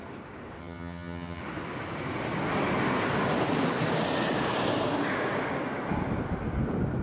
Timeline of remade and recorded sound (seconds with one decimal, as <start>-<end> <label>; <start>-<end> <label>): 0.0-0.6 recorded; 0.6-1.4 remade; 1.4-7.0 recorded